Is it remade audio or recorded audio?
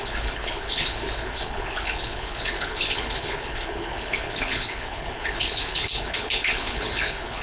remade